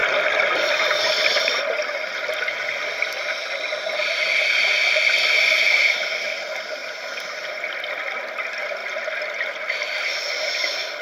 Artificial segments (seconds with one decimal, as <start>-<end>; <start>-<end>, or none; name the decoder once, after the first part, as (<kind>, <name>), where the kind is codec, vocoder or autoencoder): none

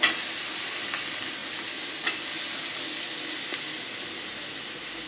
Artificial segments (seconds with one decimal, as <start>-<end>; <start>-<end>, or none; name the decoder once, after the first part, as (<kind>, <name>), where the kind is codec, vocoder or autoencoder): none

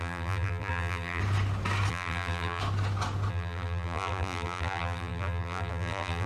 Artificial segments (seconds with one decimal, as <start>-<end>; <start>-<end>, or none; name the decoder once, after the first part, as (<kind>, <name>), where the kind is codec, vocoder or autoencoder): 0.0-1.2 (vocoder, BigVGAN v2); 1.9-2.6; 3.3-6.3

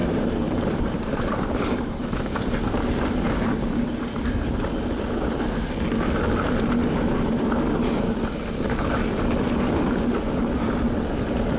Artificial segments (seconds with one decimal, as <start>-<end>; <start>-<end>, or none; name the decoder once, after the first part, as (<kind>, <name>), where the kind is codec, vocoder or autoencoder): 0.0-2.1 (vocoder, BigVGAN v2)

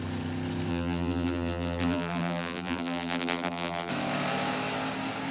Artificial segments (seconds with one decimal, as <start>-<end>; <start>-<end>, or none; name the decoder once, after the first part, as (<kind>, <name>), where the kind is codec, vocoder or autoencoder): 0.7-3.9 (vocoder, BigVGAN v2)

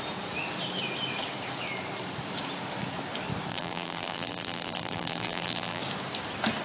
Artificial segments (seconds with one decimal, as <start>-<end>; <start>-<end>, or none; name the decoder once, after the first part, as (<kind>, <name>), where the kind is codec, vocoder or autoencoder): 3.5-5.8 (vocoder, BigVGAN v2)